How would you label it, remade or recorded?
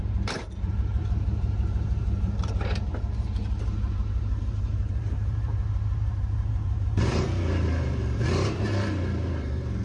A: remade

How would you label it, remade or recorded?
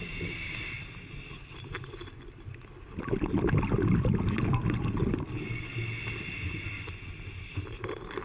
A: recorded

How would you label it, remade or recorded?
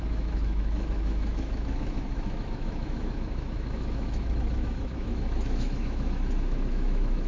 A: remade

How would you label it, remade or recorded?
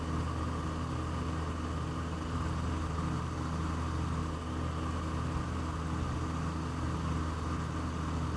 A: recorded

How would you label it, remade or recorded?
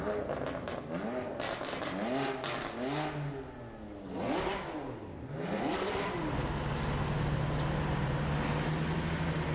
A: recorded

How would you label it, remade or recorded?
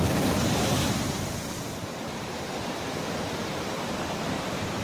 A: remade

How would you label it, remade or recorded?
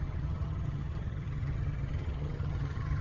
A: remade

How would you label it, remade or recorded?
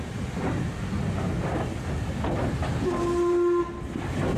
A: recorded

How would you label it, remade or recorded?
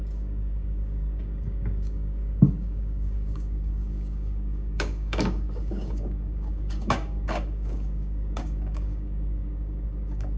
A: remade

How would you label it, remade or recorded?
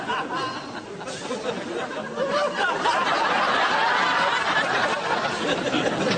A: recorded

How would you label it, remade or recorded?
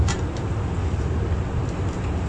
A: recorded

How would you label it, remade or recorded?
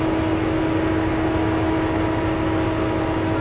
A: recorded